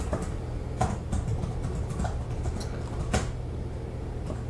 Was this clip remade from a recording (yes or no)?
no